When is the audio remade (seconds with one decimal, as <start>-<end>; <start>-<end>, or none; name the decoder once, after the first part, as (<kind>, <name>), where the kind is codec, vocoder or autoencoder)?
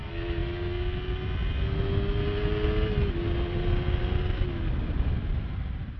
none